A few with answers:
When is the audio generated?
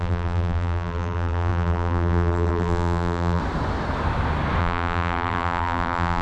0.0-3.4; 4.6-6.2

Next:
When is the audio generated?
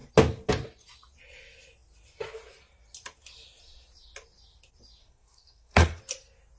5.0-6.0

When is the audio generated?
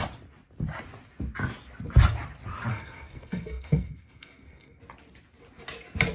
2.7-4.8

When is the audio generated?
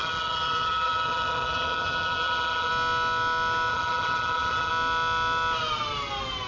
0.0-2.7; 3.7-4.7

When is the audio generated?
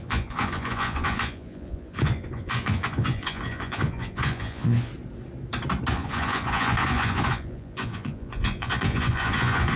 0.0-4.9; 5.9-9.8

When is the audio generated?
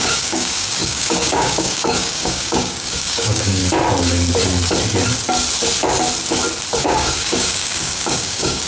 0.0-3.6; 6.8-8.7